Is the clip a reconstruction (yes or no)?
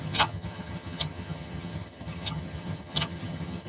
yes